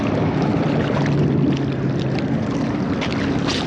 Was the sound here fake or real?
real